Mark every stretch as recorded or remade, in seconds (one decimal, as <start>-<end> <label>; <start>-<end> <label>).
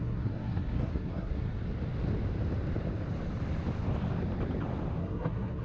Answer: 0.0-1.6 remade; 1.6-5.0 recorded; 5.0-5.6 remade